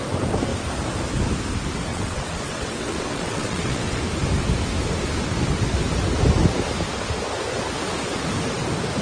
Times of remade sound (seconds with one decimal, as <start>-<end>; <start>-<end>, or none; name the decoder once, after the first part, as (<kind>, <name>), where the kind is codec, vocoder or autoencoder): 1.9-4.0 (vocoder, WaveNeXt)